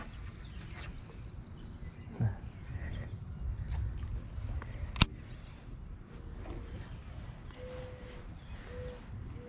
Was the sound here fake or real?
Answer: real